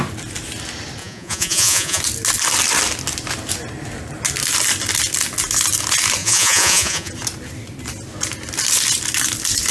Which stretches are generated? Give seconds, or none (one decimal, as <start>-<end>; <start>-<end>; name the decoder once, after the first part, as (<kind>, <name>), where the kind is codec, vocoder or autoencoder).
1.0-2.0 (vocoder, Vocos); 6.2-7.1